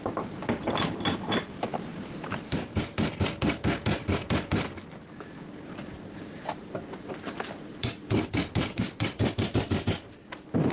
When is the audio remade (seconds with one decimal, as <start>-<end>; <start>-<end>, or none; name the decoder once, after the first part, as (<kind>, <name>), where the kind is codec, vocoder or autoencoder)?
0.0-2.7 (vocoder, BigVGAN v2); 6.0-10.7